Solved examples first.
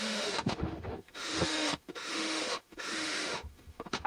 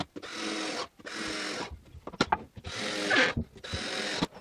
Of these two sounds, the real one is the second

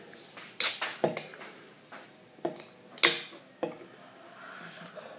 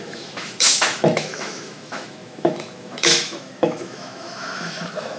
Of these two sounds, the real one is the first